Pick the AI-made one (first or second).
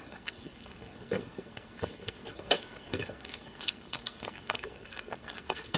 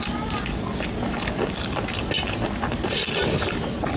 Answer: first